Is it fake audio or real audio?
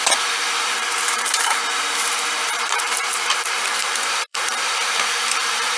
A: fake